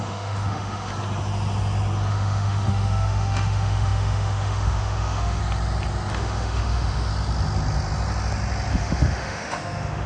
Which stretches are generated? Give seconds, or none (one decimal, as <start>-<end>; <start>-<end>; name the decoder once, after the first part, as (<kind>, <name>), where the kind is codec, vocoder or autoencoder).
0.0-0.9 (autoencoder, DAC-VAE); 2.1-5.4; 6.1-7.1; 8.7-10.1